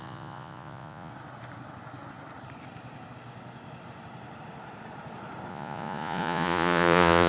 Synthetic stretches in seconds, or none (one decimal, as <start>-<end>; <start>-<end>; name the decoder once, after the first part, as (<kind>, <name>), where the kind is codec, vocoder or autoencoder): 0.0-1.1 (vocoder, Vocos); 5.5-7.3